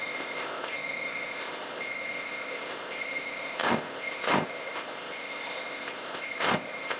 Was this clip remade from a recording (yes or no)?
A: yes